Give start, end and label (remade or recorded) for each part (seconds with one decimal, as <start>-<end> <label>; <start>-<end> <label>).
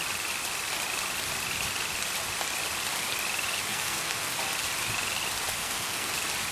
0.0-3.7 recorded; 3.7-4.3 remade; 4.3-5.6 recorded; 5.6-6.1 remade; 6.1-6.5 recorded